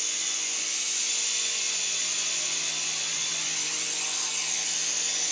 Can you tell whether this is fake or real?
fake